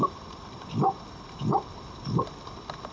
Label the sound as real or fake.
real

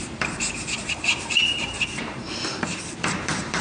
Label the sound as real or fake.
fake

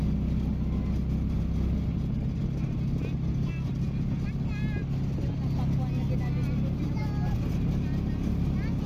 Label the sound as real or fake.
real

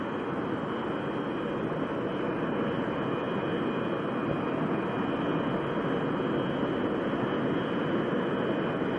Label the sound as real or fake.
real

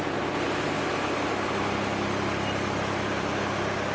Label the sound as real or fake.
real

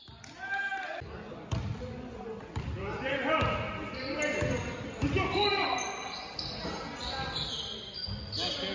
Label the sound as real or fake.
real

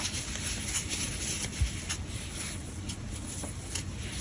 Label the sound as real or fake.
real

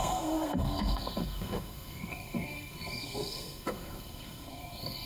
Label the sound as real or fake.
fake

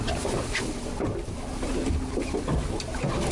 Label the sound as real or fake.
real